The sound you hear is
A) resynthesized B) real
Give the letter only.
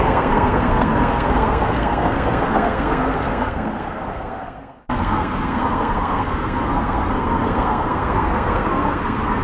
A